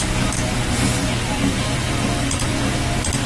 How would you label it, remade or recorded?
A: recorded